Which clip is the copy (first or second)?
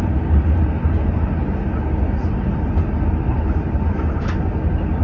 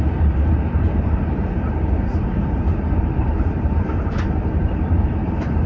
second